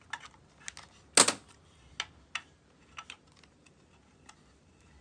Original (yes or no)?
yes